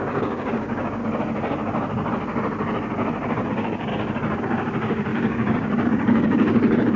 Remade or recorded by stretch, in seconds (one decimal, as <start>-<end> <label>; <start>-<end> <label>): 0.0-1.0 remade; 1.0-3.5 recorded; 3.5-3.9 remade; 3.9-4.4 recorded; 4.4-7.0 remade